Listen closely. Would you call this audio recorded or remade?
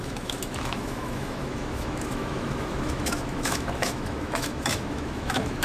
remade